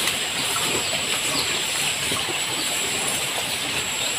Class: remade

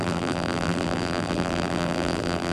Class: remade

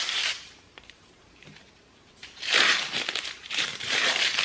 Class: remade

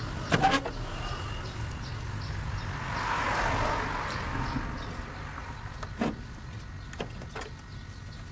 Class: recorded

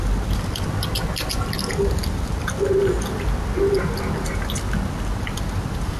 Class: recorded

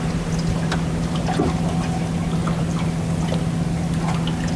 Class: recorded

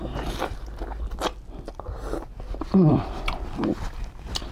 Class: recorded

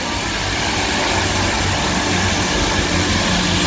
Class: recorded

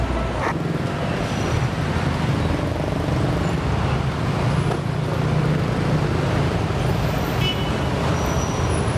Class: recorded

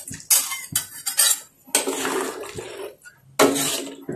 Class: recorded